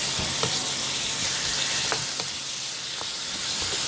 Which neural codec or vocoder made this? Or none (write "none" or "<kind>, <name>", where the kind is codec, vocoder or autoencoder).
none